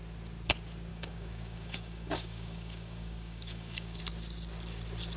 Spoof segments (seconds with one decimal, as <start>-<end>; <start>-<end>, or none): 0.9-4.0